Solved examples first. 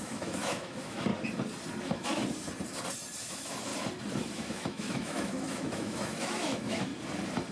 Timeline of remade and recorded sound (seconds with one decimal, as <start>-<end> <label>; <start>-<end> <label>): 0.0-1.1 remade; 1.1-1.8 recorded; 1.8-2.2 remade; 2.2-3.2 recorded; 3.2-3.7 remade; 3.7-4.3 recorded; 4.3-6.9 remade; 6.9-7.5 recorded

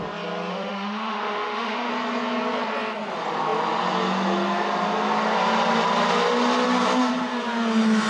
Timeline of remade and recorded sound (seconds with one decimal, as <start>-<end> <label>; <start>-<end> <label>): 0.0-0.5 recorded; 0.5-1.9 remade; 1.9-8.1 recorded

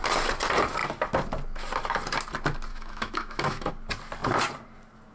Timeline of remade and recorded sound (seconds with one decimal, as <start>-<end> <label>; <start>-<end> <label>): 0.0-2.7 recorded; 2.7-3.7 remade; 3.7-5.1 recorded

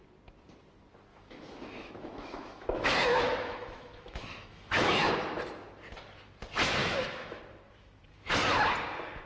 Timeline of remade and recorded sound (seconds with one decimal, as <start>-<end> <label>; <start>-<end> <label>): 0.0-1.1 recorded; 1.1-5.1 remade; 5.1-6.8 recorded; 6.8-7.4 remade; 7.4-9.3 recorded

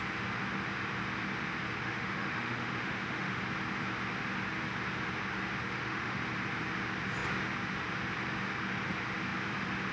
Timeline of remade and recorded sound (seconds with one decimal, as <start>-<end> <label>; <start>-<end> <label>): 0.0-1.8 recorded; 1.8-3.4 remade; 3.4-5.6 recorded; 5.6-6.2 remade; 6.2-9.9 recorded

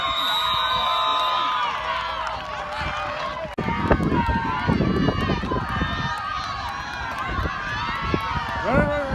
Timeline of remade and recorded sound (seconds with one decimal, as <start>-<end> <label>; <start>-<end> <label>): 0.0-9.1 recorded

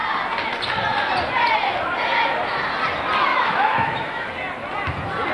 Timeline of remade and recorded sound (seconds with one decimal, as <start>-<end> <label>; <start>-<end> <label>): 0.0-3.3 recorded; 3.3-4.3 remade; 4.3-5.3 recorded

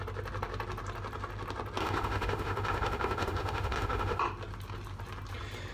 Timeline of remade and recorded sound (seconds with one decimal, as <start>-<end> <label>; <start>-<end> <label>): 0.0-1.8 recorded; 1.8-4.2 remade; 4.2-5.7 recorded